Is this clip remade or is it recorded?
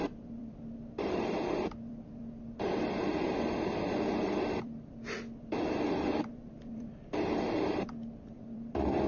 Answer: remade